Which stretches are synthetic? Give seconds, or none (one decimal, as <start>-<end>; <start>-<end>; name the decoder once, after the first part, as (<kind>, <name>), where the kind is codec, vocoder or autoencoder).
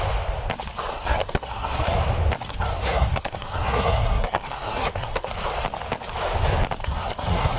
0.9-2.0 (codec, SNAC); 2.5-5.3; 6.8-7.6